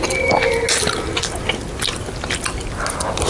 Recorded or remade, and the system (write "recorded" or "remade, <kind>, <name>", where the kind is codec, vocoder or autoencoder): recorded